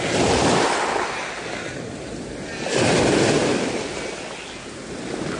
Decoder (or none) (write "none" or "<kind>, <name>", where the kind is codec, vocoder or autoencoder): none